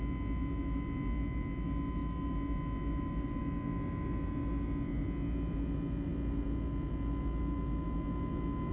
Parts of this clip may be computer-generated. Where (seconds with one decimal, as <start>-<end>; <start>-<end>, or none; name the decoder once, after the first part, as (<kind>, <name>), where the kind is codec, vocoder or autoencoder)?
none